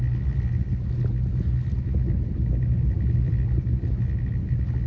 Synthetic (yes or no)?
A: no